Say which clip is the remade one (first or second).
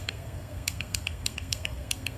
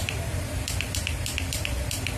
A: first